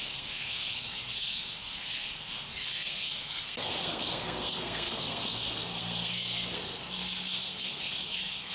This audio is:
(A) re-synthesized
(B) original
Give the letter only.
A